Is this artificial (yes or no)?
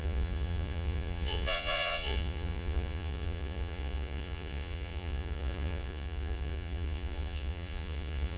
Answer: yes